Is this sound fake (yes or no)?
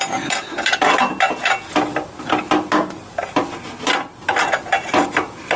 no